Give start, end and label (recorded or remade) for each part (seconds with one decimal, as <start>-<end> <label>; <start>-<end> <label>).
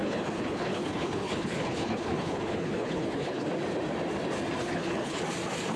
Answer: 0.0-3.5 remade; 3.5-4.6 recorded; 4.6-5.2 remade; 5.2-5.8 recorded